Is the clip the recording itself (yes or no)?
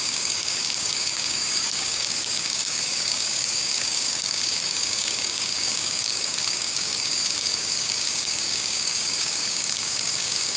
no